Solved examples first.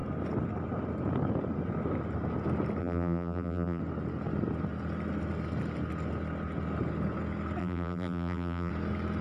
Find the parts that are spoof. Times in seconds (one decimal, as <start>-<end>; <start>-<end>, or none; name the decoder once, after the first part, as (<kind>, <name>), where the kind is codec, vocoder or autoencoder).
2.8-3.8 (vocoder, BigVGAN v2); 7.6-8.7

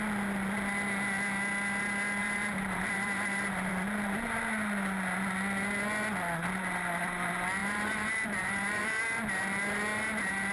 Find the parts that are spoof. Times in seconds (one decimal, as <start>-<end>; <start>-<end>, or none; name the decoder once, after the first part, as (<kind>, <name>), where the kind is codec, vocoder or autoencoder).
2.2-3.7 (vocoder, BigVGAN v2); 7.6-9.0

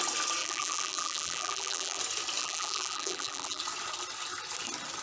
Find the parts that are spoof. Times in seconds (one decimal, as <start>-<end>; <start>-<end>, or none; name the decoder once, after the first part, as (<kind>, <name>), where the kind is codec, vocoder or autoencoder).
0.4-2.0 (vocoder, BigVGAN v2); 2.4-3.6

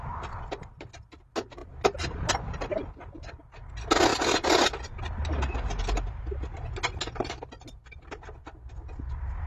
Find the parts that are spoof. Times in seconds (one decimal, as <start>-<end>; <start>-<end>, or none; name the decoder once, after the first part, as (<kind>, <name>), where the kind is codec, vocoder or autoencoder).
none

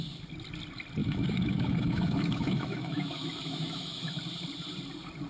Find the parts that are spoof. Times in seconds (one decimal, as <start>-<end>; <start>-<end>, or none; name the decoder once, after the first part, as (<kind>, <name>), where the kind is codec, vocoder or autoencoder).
1.0-4.2 (autoencoder, DAC-VAE)

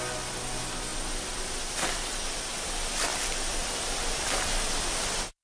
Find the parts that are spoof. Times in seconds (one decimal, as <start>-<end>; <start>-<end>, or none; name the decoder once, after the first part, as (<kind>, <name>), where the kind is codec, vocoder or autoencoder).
none